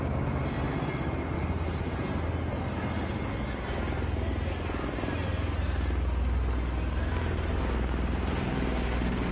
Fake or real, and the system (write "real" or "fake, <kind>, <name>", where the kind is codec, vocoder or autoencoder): real